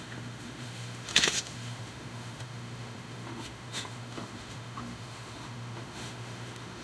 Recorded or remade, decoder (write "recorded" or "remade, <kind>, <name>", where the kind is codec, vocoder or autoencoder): remade, autoencoder, DAC-VAE